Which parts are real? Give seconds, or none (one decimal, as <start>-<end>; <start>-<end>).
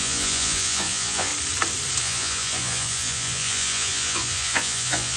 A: 1.3-2.0